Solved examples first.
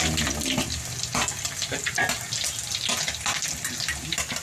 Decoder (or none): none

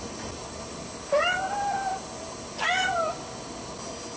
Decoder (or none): none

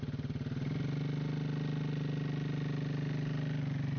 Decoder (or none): none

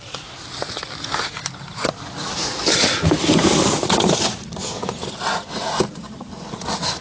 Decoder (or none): none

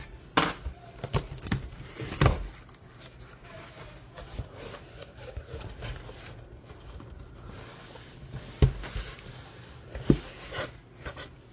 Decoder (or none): none